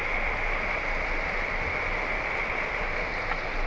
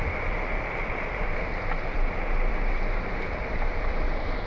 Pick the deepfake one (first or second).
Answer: second